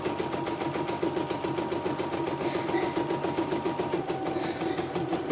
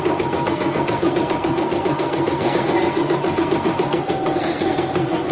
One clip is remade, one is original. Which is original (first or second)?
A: first